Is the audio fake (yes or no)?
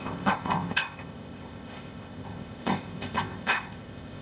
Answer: yes